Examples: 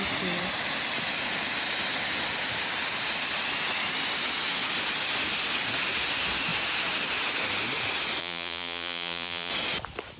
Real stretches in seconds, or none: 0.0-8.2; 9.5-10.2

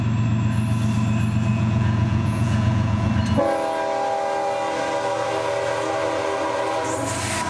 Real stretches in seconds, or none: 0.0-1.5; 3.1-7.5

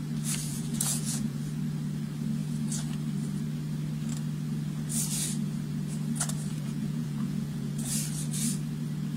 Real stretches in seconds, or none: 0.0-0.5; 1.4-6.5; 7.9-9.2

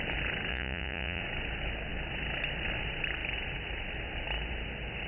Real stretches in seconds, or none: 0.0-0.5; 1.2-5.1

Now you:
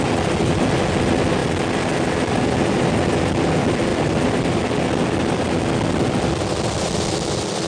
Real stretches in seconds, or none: 0.0-7.7

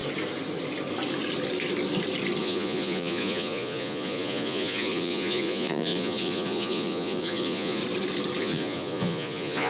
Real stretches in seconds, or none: 0.0-2.4; 7.8-8.4

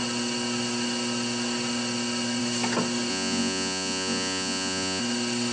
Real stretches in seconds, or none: 0.0-3.1; 5.0-5.5

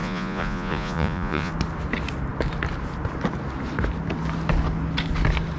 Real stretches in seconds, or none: 1.5-5.6